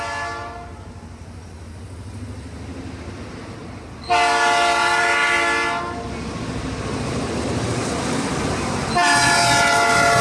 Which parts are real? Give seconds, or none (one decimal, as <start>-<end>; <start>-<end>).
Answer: 0.0-10.2